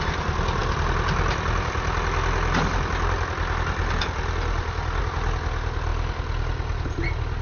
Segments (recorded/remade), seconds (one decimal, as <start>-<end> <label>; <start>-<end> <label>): 0.0-7.4 recorded